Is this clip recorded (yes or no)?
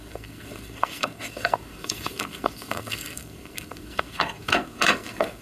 no